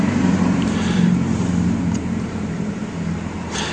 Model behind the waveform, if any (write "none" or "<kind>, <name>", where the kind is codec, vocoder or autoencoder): vocoder, BigVGAN v2